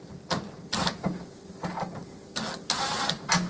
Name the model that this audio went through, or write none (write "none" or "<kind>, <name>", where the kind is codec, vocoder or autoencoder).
none